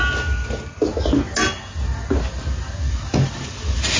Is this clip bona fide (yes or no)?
yes